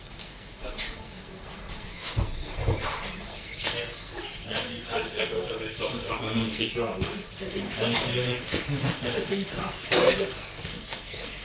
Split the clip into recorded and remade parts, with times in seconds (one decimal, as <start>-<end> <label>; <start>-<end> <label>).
0.0-2.6 remade; 2.6-3.2 recorded; 3.2-11.4 remade